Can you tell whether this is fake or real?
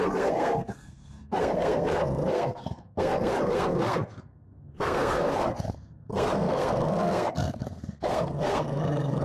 fake